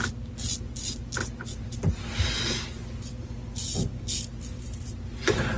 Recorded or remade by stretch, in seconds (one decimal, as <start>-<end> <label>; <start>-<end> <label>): 0.0-5.6 recorded